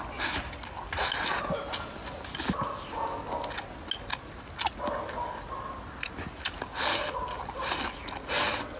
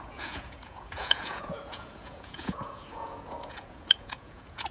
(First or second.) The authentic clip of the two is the first